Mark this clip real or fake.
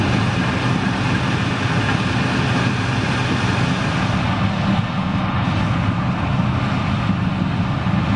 real